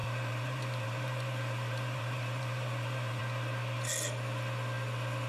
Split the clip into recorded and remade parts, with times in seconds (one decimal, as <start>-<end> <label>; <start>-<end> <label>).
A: 0.0-3.2 remade; 3.2-5.3 recorded